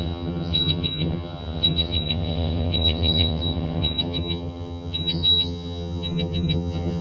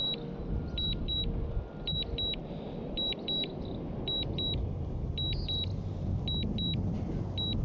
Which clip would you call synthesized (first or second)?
first